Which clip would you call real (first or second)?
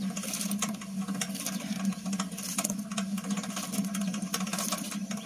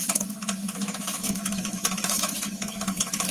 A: first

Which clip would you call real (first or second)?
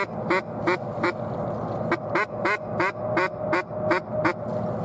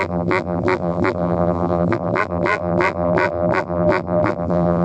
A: first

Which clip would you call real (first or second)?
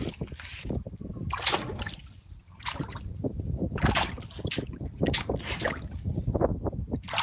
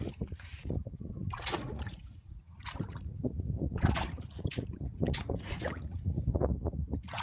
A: first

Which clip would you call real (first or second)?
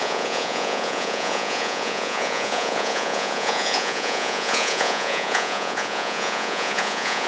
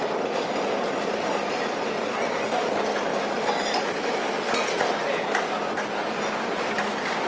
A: second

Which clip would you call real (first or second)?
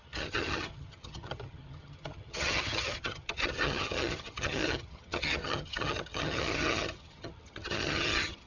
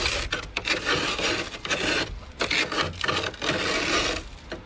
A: second